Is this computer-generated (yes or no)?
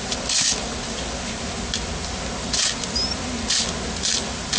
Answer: no